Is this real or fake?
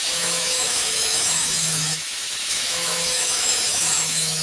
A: fake